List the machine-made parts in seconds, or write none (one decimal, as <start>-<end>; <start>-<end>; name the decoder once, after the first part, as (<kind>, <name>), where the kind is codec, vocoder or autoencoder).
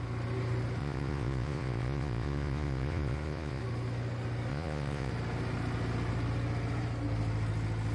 0.8-3.6 (vocoder, Vocos); 4.5-5.1